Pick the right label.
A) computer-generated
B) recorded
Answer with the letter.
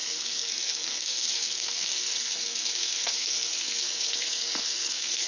A